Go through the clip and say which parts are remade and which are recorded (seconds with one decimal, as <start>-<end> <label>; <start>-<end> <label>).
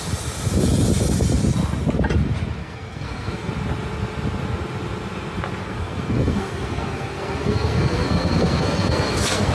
0.0-2.6 recorded; 2.6-3.5 remade; 3.5-5.6 recorded; 5.6-9.5 remade